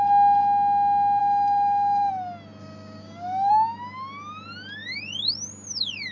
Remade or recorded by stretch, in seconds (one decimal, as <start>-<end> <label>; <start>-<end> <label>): 0.0-1.2 recorded; 1.2-2.1 remade; 2.1-2.6 recorded; 2.6-3.5 remade; 3.5-6.1 recorded